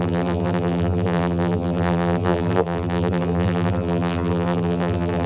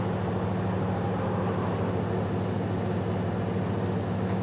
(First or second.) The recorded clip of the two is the second